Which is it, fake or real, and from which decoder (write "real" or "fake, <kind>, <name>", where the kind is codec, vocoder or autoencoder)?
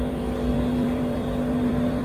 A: fake, vocoder, BigVGAN v2